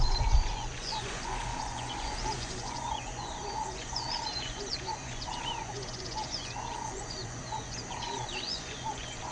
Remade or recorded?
remade